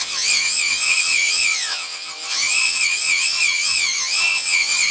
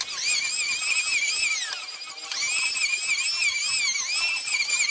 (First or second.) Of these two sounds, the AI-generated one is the first